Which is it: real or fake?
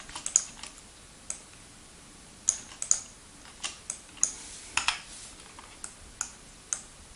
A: real